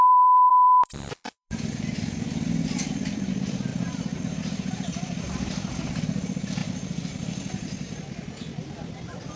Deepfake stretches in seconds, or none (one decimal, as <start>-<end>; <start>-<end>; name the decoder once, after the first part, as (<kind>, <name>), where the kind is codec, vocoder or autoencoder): 0.0-9.4 (vocoder, BigVGAN v2)